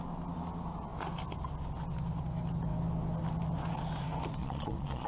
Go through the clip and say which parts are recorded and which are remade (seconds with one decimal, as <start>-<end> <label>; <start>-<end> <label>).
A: 0.0-4.4 recorded; 4.4-5.1 remade